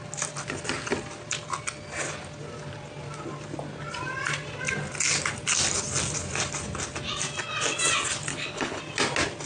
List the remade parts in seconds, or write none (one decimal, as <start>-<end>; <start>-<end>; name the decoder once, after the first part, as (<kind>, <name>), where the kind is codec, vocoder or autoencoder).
8.3-8.8 (codec, HILCodec)